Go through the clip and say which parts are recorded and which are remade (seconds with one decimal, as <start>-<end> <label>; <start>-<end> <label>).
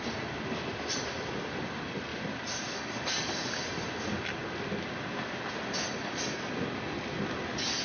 0.0-0.7 recorded; 0.7-1.3 remade; 1.3-2.1 recorded; 2.1-2.6 remade; 2.6-7.8 recorded